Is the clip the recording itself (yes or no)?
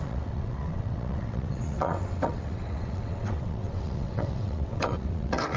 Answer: no